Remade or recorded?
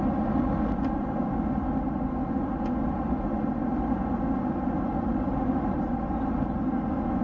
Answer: recorded